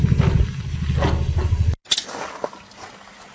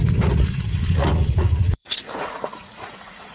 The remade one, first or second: second